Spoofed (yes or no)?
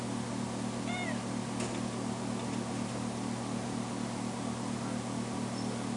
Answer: no